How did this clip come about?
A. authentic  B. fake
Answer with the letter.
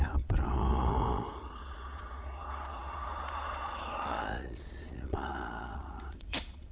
B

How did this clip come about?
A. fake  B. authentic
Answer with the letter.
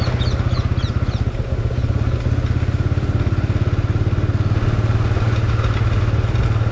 B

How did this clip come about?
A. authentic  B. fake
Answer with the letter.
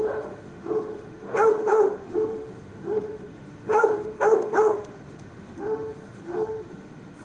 B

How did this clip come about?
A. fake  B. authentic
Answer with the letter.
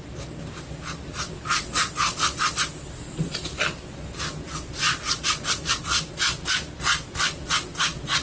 B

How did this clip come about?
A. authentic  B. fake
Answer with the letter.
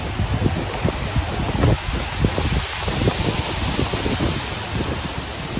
A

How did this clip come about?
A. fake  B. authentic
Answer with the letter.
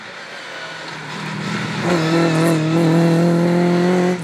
B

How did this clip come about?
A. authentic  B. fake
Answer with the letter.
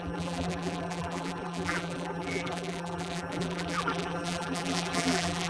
B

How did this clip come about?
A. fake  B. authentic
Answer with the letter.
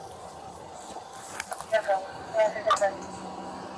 B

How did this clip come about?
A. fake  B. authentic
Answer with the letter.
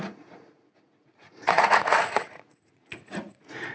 A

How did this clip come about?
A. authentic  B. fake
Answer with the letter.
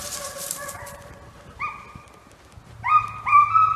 A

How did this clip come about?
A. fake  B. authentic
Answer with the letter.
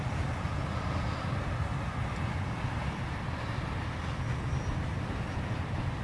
B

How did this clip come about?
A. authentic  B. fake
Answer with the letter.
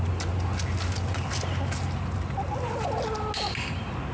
A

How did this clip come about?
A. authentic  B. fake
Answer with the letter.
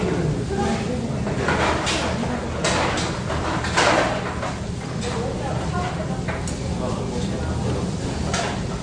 A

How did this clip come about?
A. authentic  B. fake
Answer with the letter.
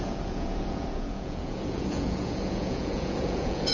B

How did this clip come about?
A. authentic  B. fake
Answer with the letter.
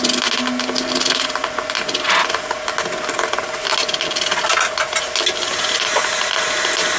A